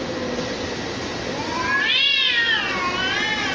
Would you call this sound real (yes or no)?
yes